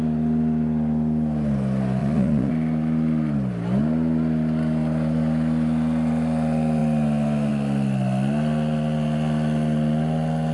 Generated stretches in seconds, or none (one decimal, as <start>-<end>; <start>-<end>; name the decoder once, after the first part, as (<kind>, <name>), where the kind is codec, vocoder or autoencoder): 2.0-2.5 (vocoder, Vocos)